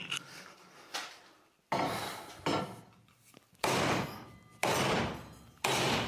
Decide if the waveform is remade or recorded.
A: recorded